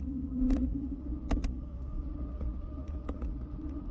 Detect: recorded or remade remade